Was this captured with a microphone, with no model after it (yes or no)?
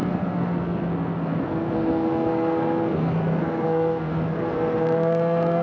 no